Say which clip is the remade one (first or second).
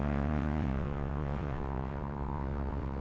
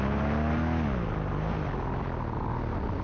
first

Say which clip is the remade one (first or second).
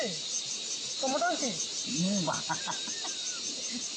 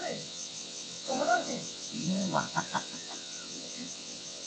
second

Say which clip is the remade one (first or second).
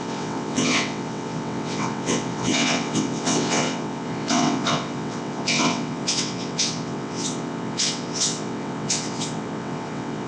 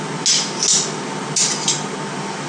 first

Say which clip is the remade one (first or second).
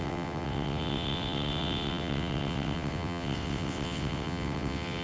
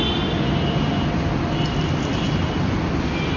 first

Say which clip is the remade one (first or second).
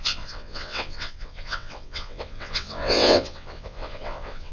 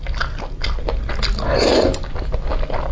first